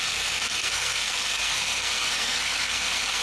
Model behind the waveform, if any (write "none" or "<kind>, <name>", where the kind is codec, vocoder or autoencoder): codec, SNAC